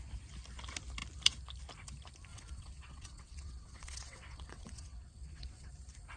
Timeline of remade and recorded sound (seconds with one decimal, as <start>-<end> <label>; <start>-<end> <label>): 0.0-2.3 recorded; 2.3-5.7 remade; 5.7-6.2 recorded